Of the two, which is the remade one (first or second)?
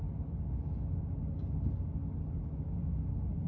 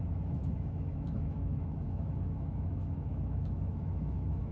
second